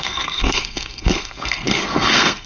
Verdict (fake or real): fake